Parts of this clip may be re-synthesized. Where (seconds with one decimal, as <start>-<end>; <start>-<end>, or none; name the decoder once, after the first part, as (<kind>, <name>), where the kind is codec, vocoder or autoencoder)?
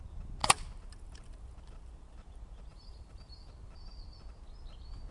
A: 2.7-3.5 (vocoder, BigVGAN v2)